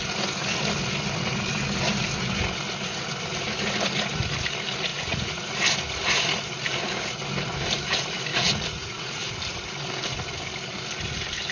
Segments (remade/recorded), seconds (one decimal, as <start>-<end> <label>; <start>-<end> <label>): 0.0-4.9 recorded; 4.9-5.5 remade; 5.5-8.3 recorded; 8.3-9.3 remade; 9.3-11.5 recorded